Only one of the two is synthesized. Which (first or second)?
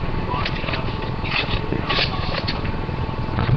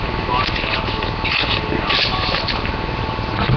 first